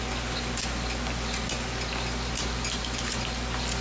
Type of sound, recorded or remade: recorded